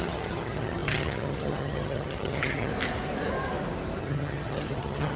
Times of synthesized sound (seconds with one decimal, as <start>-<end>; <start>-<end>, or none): 0.0-2.7; 4.0-5.2